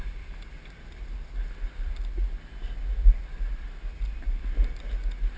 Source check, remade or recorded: recorded